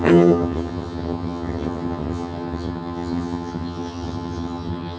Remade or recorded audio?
remade